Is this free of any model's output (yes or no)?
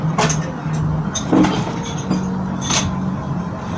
yes